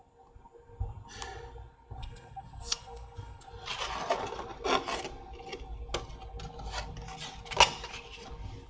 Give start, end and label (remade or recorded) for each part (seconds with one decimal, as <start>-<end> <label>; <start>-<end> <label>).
0.0-2.0 recorded; 2.0-3.4 remade; 3.4-8.7 recorded